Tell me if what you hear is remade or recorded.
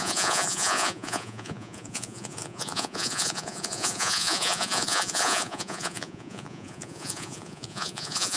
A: remade